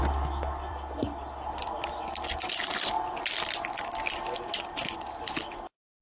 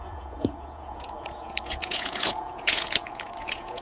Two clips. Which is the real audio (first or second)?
first